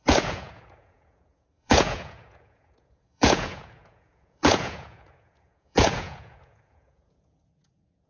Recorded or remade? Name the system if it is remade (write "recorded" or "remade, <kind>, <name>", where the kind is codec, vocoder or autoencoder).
remade, vocoder, Vocos